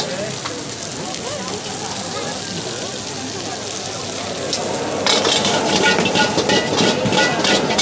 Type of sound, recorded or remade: recorded